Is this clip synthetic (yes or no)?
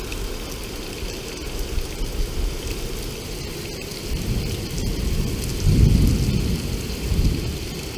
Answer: no